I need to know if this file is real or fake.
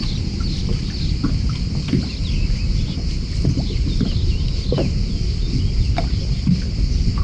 real